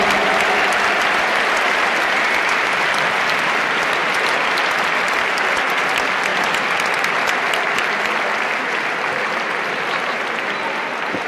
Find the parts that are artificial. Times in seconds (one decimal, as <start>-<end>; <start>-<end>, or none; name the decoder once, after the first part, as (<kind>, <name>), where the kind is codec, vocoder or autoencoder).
none